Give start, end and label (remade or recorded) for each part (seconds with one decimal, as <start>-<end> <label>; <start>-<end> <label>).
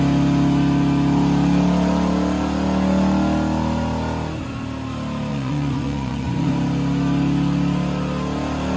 0.0-5.3 recorded; 5.3-6.5 remade; 6.5-8.8 recorded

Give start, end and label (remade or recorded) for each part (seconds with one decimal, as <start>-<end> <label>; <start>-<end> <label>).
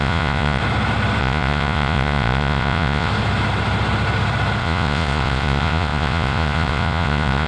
0.0-0.6 remade; 0.6-1.2 recorded; 1.2-3.1 remade; 3.1-4.6 recorded; 4.6-7.5 remade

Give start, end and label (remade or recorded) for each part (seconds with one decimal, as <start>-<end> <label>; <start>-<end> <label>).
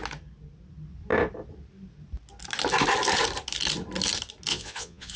0.0-4.5 recorded; 4.5-5.2 remade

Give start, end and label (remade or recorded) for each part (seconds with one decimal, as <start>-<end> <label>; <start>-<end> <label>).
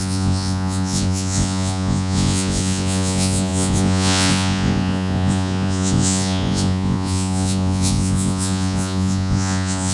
0.0-9.9 remade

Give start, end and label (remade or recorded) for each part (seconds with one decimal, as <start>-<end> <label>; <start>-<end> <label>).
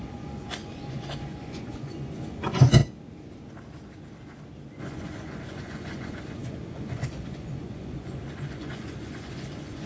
0.0-2.8 remade; 2.8-4.8 recorded; 4.8-9.9 remade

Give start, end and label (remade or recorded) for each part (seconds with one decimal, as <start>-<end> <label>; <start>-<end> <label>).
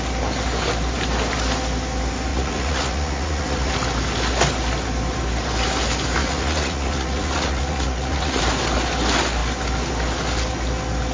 0.0-2.3 recorded; 2.3-3.7 remade; 3.7-6.2 recorded; 6.2-8.4 remade; 8.4-11.1 recorded